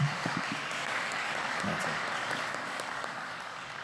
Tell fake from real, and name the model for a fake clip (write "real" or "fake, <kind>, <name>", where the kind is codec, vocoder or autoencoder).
fake, codec, DAC